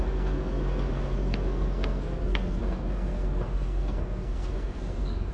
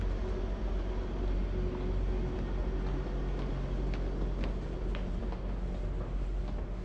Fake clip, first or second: first